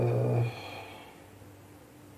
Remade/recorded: recorded